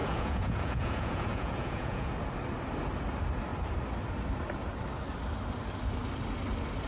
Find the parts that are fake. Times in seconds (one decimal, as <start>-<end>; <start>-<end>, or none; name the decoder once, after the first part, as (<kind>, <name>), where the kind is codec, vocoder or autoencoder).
0.0-2.1 (vocoder, Vocos)